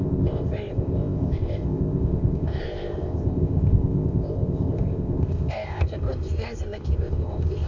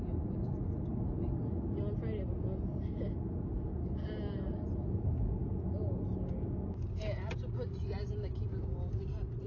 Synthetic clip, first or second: first